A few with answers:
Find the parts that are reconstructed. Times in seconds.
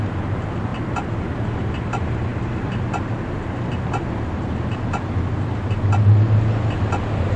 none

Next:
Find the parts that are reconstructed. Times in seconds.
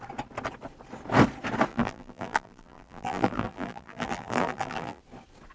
1.7-5.0 (vocoder, BigVGAN v2)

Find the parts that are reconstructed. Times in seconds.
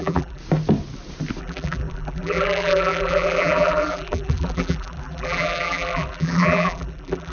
0.0-0.4 (vocoder, BigVGAN v2); 1.4-7.3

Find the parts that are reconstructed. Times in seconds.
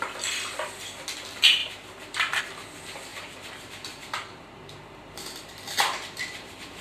1.6-2.4 (vocoder, BigVGAN v2); 3.1-6.8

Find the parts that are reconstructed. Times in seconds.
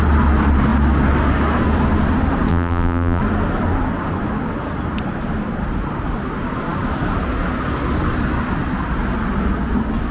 2.5-3.2 (vocoder, BigVGAN v2)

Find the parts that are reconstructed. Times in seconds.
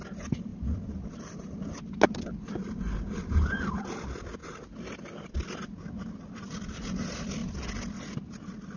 0.5-1.1 (vocoder, BigVGAN v2)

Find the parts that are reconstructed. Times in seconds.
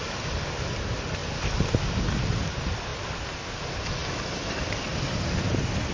none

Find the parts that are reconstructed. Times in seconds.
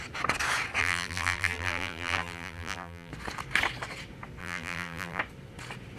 0.8-3.1 (vocoder, BigVGAN v2); 4.4-5.2